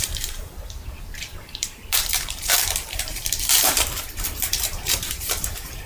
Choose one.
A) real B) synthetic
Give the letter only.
B